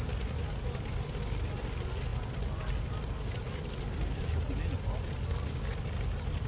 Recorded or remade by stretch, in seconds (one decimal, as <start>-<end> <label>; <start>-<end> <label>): 0.0-6.5 recorded